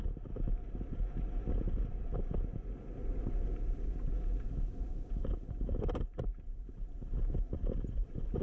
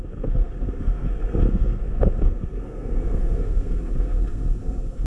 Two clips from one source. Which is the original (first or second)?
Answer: first